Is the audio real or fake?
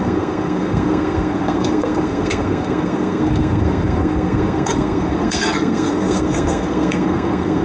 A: fake